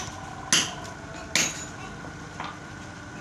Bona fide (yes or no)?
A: yes